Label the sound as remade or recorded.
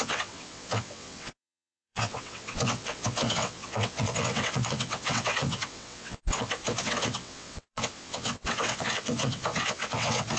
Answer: remade